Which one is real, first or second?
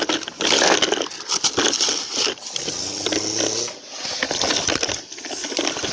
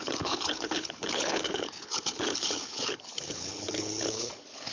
first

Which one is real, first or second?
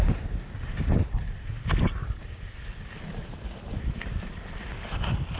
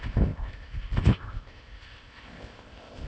first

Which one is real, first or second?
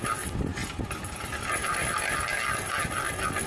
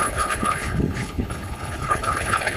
first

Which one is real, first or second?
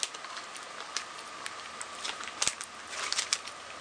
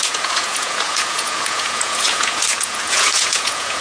first